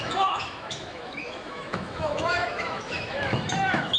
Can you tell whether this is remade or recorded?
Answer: remade